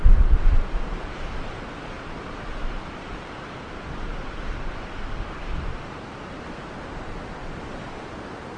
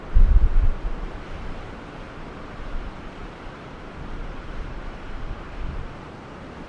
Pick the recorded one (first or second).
first